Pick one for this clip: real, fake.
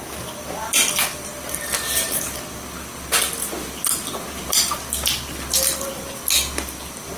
real